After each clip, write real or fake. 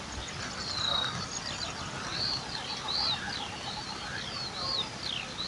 real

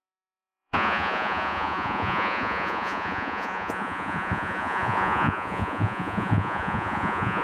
fake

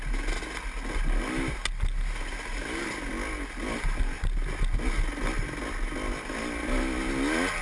real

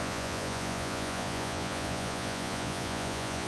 fake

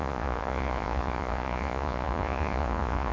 fake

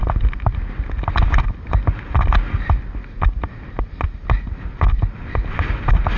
real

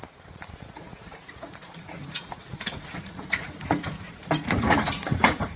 fake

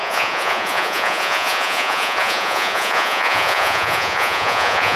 fake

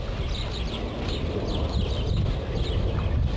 real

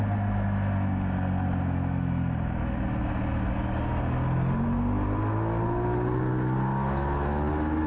real